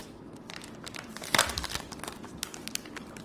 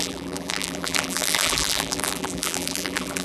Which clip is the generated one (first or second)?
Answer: second